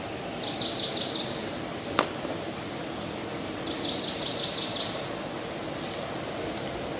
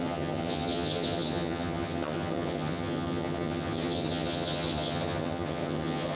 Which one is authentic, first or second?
first